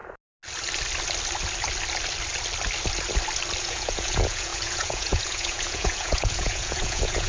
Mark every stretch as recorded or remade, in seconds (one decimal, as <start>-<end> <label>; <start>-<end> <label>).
0.0-3.6 recorded; 3.6-7.3 remade